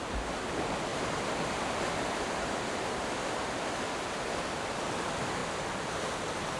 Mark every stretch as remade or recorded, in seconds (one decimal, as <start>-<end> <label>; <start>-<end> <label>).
0.0-0.9 recorded; 0.9-4.9 remade; 4.9-6.6 recorded